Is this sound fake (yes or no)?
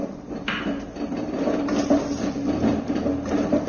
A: no